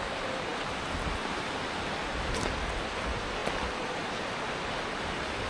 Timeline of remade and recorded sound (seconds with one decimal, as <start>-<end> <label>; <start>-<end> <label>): 0.0-5.5 recorded